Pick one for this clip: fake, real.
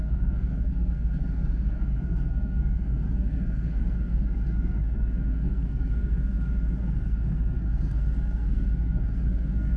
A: fake